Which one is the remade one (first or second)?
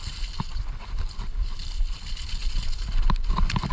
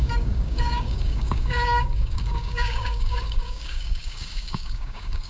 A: second